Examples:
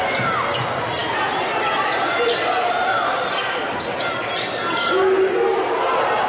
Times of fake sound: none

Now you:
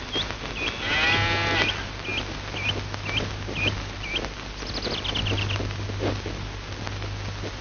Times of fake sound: none

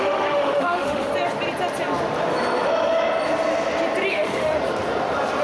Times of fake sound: 0.0-1.1 (autoencoder, DAC-VAE); 4.1-4.5

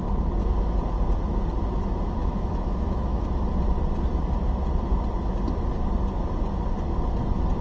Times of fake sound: 2.2-3.2 (autoencoder, DAC-VAE)

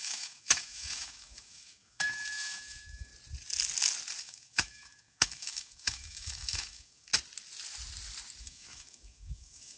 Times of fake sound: 0.0-3.1 (autoencoder, DAC-VAE); 4.2-7.1; 8.4-9.8